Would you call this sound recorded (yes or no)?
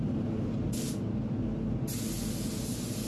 yes